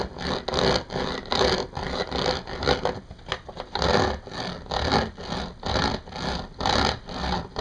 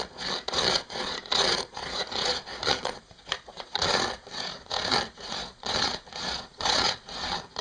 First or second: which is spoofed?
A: second